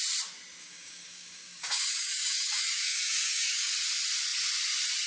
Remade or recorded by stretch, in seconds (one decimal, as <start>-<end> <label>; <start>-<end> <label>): 0.0-0.6 recorded; 0.6-3.7 remade; 3.7-5.1 recorded